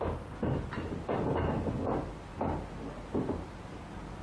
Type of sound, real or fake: real